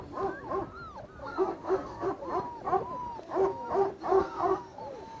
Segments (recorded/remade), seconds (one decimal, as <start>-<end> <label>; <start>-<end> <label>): 0.0-1.2 recorded; 1.2-2.1 remade; 2.1-4.1 recorded; 4.1-4.8 remade; 4.8-5.2 recorded